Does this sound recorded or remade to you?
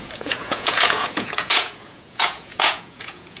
remade